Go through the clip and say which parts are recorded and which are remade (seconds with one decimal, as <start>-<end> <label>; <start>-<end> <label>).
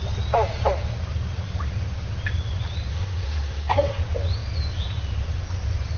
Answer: 0.0-2.9 recorded; 2.9-4.0 remade; 4.0-6.0 recorded